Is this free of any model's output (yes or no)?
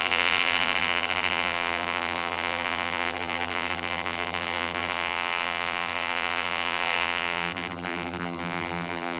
no